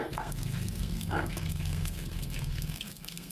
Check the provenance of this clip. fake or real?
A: fake